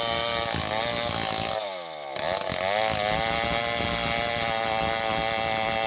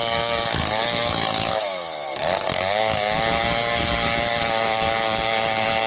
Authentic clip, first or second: first